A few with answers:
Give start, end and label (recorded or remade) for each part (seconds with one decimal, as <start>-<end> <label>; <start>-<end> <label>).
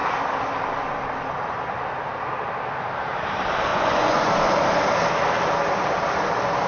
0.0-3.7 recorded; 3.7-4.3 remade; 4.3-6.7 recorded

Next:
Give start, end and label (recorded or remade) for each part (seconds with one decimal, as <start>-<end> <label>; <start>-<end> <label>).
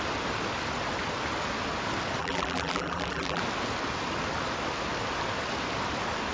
0.0-2.2 recorded; 2.2-3.4 remade; 3.4-6.3 recorded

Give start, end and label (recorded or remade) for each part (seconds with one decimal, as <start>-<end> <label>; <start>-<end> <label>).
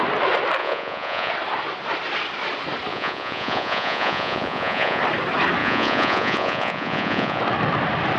0.0-0.6 recorded; 0.6-1.3 remade; 1.3-2.9 recorded; 2.9-5.0 remade; 5.0-5.6 recorded; 5.6-7.4 remade; 7.4-8.2 recorded